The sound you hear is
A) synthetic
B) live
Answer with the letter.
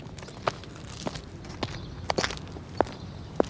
B